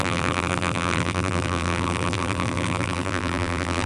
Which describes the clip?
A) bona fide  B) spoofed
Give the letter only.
B